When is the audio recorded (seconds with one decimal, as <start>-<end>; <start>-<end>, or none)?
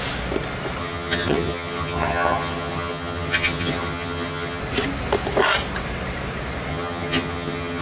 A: 0.0-0.8; 4.6-6.7